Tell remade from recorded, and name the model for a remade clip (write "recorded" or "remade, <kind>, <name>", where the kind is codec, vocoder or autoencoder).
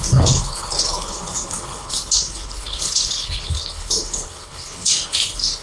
remade, codec, HILCodec